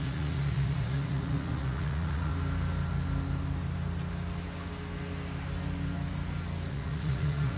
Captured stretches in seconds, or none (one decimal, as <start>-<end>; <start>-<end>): 2.3-6.7